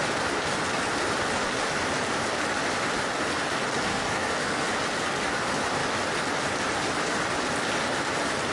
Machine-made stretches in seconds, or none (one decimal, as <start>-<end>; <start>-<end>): 3.9-4.7